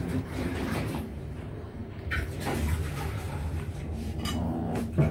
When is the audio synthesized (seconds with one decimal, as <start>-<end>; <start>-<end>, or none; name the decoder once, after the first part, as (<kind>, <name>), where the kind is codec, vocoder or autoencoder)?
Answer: 0.0-5.1 (vocoder, BigVGAN v2)